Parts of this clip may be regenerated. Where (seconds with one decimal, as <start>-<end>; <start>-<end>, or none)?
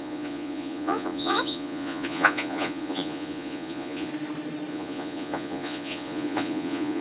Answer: 0.0-4.1; 4.7-7.0